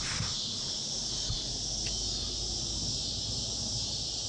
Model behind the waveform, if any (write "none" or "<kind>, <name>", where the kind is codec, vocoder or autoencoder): none